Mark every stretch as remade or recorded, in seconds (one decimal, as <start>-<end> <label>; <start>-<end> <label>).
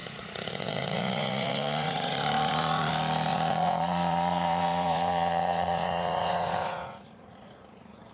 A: 0.0-2.9 remade; 2.9-3.3 recorded; 3.3-8.1 remade